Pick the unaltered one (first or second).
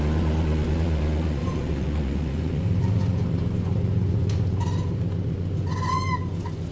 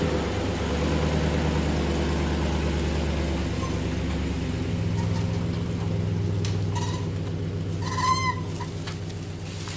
second